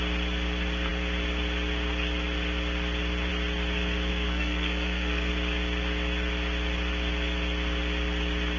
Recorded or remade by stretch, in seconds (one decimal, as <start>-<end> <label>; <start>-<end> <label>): 0.0-4.1 recorded; 4.1-5.3 remade; 5.3-8.6 recorded